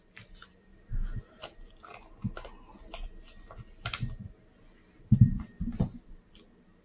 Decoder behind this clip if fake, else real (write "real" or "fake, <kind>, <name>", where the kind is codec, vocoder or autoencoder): real